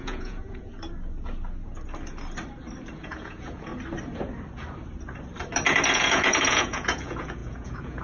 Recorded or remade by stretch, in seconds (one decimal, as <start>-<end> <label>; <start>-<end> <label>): 0.0-0.7 remade; 0.7-3.0 recorded; 3.0-3.7 remade; 3.7-5.9 recorded; 5.9-8.0 remade